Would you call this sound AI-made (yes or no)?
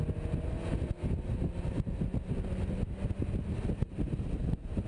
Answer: no